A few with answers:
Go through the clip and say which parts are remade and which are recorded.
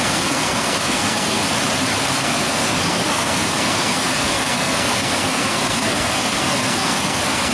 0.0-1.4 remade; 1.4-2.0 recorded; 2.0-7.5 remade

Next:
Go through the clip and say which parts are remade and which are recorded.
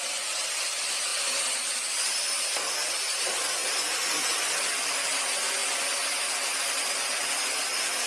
0.0-8.1 recorded